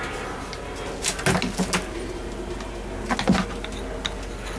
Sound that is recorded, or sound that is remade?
recorded